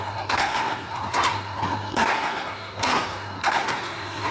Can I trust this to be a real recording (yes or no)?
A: no